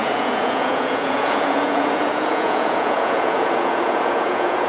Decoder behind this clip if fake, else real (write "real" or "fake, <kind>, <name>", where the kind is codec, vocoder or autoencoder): fake, vocoder, Vocos